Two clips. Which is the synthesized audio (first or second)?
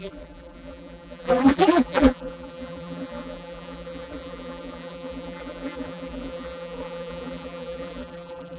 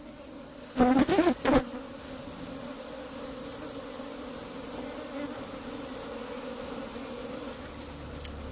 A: first